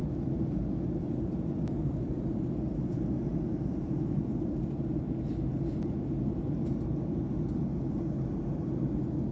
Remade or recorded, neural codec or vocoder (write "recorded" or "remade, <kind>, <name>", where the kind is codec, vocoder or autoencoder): recorded